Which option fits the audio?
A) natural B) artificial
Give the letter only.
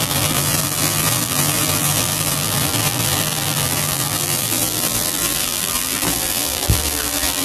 B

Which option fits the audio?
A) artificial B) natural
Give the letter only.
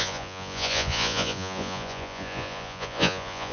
A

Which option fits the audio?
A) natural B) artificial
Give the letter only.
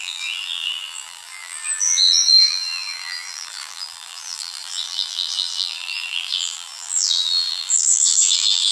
B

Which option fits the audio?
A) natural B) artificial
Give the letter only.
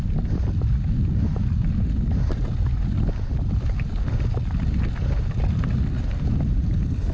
A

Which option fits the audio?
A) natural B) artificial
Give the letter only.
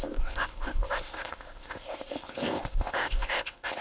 B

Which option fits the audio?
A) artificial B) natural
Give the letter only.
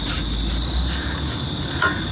B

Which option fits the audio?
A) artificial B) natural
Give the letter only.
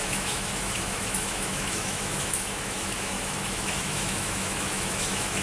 A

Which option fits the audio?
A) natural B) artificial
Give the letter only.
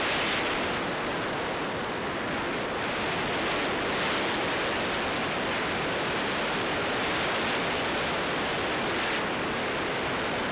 A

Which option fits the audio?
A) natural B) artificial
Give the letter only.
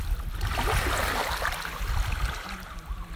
A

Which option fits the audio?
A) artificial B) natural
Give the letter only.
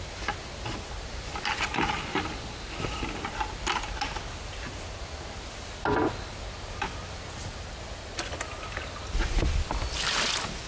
B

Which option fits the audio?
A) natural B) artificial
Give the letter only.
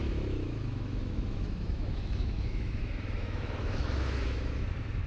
B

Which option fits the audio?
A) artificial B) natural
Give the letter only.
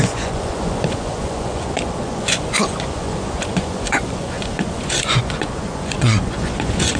A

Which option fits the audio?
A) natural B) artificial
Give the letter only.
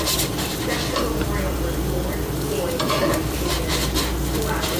B